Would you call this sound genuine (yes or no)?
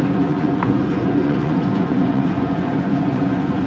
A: no